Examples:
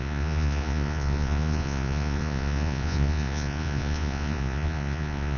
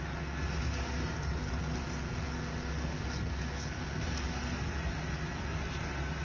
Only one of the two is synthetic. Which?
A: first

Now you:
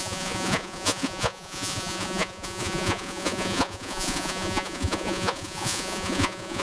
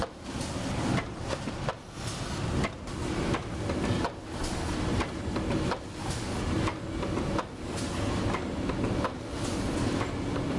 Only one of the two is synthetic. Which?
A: first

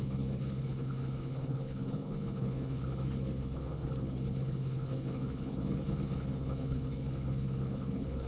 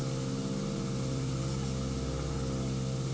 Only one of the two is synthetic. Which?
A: first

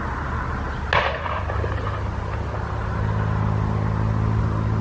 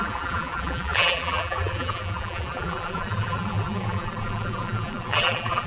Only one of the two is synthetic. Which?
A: second